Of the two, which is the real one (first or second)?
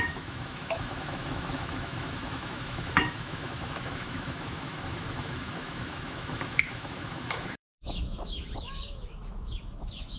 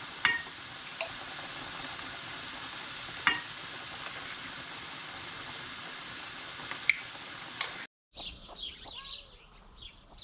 second